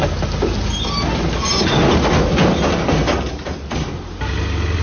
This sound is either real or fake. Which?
real